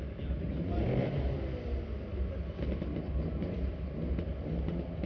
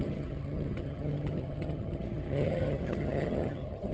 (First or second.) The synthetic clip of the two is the second